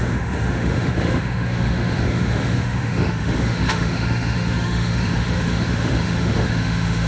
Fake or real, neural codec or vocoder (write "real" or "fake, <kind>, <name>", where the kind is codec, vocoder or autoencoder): fake, autoencoder, DAC-VAE